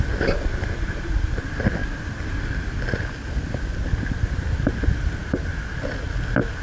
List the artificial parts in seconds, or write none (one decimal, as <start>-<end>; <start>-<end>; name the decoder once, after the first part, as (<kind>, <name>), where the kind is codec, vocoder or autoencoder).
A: none